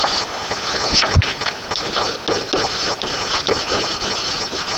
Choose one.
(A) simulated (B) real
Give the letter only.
B